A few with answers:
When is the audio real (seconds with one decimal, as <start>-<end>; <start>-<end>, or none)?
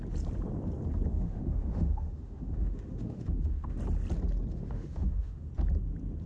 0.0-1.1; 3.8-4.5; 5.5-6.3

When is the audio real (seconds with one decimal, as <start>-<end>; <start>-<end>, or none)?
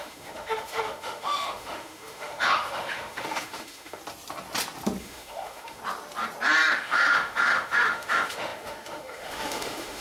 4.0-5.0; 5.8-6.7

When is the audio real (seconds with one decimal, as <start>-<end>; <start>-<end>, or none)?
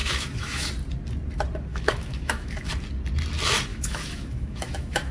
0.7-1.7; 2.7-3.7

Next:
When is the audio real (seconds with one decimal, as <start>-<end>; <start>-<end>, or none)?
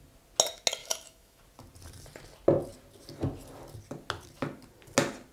0.0-0.8; 1.4-5.3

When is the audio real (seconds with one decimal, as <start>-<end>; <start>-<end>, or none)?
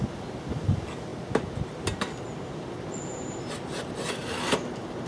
0.0-5.1